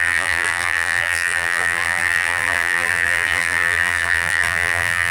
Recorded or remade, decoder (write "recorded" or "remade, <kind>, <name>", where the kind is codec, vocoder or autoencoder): remade, vocoder, BigVGAN v2